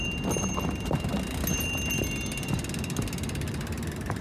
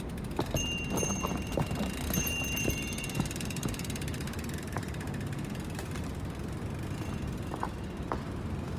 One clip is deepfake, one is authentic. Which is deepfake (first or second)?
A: second